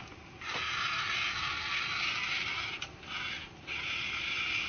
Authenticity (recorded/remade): recorded